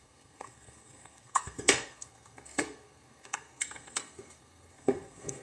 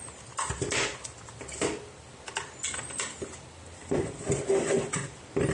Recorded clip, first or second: second